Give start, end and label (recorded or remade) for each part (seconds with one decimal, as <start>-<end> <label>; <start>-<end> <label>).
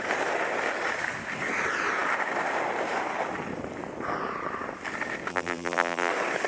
0.0-5.3 recorded; 5.3-6.1 remade; 6.1-6.5 recorded